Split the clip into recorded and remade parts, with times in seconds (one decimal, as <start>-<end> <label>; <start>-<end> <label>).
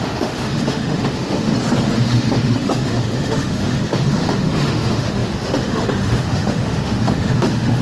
0.0-1.5 remade; 1.5-2.0 recorded; 2.0-7.8 remade